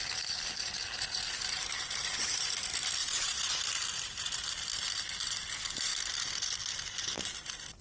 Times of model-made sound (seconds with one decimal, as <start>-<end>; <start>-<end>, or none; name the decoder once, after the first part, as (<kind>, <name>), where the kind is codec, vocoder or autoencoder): 3.0-3.5 (vocoder, Vocos)